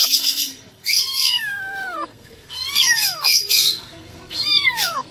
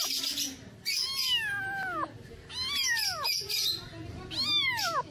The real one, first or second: second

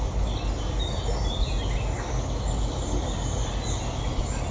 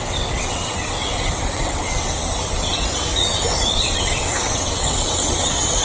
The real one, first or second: first